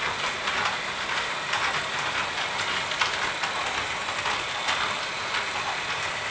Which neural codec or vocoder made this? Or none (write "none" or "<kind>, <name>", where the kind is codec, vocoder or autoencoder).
none